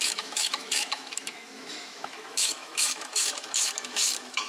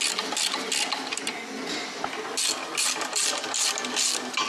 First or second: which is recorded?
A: second